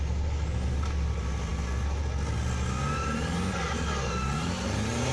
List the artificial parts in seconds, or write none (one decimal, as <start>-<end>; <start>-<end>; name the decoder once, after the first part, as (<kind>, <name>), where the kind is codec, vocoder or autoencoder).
none